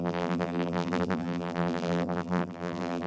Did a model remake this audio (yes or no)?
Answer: yes